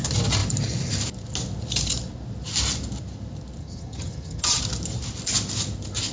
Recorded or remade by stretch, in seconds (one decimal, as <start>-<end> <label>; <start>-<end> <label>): 0.0-3.6 recorded; 3.6-4.6 remade; 4.6-6.1 recorded